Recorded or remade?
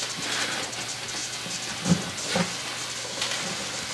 recorded